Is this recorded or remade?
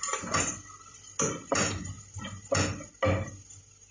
recorded